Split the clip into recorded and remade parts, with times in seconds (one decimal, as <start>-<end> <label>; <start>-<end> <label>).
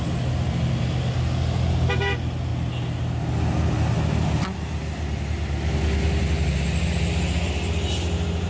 0.0-8.5 recorded